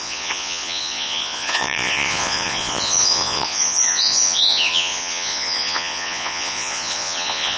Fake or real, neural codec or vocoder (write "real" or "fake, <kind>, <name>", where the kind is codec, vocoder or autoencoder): fake, vocoder, Vocos